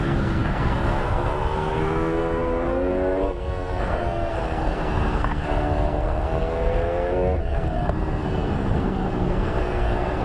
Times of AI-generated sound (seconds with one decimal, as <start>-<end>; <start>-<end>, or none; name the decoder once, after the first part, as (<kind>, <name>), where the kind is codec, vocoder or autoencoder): 0.0-10.2 (codec, SNAC)